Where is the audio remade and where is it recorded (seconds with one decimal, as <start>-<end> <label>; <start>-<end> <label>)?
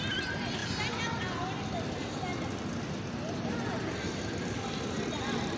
0.0-5.6 recorded